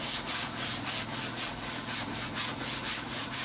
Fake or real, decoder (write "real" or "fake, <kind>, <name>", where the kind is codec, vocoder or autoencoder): fake, vocoder, Vocos